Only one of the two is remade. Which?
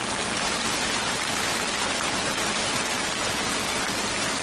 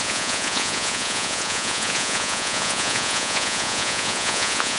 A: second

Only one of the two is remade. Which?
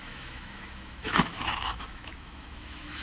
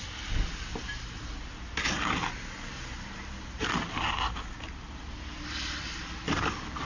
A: first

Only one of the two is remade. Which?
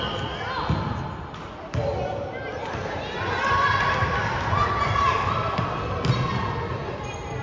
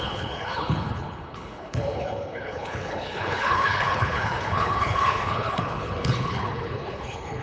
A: second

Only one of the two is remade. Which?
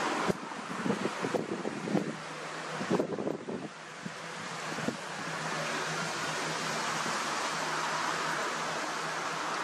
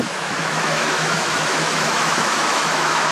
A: second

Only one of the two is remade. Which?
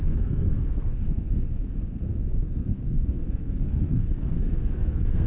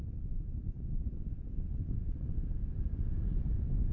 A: first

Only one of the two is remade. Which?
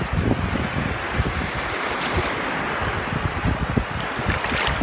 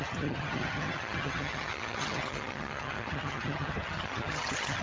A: second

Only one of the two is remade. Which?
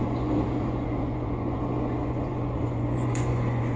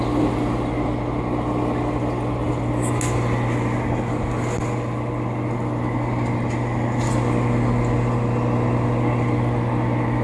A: first